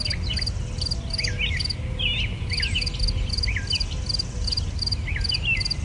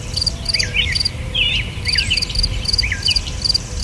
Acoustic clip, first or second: first